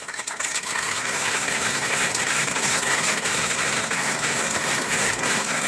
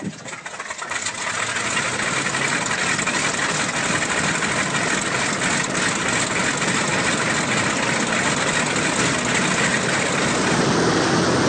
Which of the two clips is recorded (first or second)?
second